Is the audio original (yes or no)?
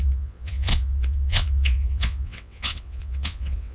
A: no